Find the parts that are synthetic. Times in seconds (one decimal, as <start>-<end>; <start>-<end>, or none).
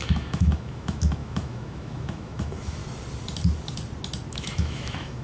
0.0-2.8; 4.3-5.2